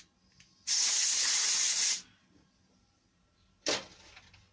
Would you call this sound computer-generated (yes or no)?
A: no